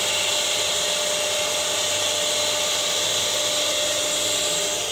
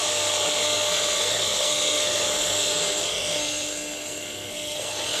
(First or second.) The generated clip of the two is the second